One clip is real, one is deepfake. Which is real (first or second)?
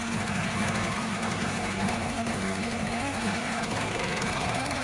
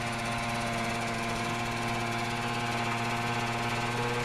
second